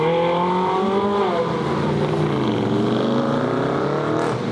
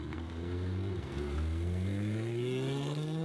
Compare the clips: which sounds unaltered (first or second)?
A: first